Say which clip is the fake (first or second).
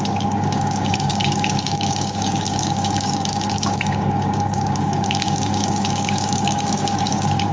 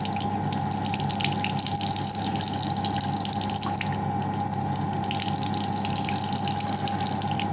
first